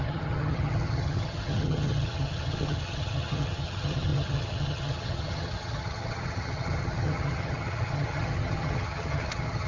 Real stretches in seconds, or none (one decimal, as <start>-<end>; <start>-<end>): none